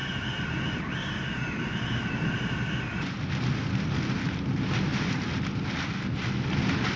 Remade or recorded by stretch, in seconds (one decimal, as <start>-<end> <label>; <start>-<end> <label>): 0.0-7.0 recorded